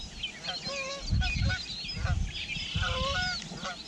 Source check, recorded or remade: recorded